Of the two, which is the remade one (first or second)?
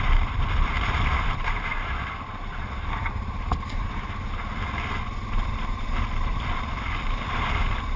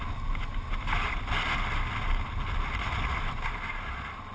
first